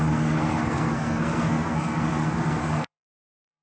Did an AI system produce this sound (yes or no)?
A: yes